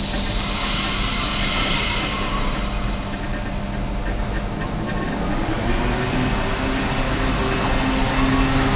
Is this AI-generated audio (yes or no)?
no